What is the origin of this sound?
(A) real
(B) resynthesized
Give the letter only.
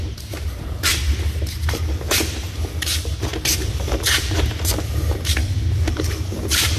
B